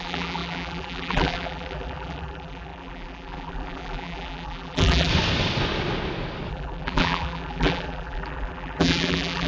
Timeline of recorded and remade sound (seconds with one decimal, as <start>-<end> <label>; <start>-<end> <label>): 0.0-5.1 remade; 5.1-6.5 recorded; 6.5-9.5 remade